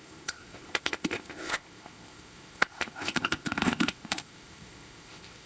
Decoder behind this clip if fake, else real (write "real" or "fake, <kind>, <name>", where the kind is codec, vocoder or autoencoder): fake, codec, ZipCodec